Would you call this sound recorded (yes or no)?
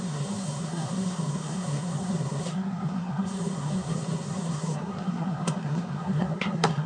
no